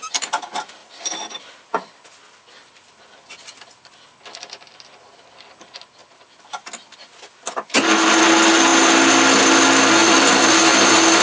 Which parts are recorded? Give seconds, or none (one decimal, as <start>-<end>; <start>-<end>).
0.0-0.8; 1.7-6.0; 8.2-10.0; 10.6-11.2